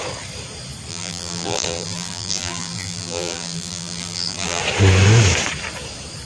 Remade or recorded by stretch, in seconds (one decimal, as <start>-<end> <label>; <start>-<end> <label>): 0.0-0.9 recorded; 0.9-4.6 remade; 4.6-6.2 recorded